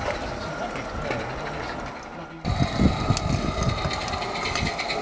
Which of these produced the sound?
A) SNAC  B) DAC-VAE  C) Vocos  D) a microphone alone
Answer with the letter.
D